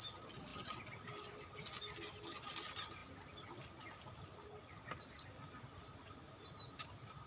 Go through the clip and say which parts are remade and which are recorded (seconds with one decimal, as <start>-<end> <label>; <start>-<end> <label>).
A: 0.0-7.3 recorded